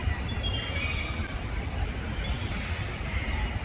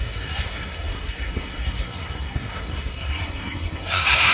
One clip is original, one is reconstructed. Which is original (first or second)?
first